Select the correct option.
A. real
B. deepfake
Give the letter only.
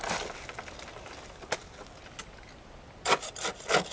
A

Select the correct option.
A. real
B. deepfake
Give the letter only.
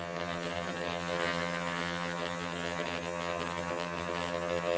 B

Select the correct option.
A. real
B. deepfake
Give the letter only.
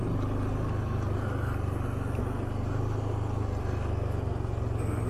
A